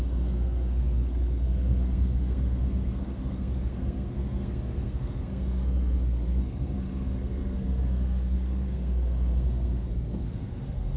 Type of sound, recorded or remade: remade